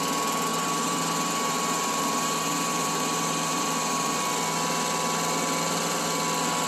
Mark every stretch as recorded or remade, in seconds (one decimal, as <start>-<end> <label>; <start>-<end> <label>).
0.0-0.5 recorded; 0.5-4.3 remade; 4.3-6.7 recorded